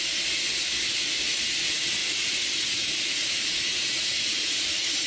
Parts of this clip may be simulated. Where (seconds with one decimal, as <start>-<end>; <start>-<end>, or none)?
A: 2.0-5.1